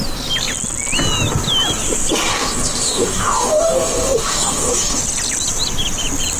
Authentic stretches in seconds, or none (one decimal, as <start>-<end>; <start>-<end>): 0.0-2.3; 5.0-6.4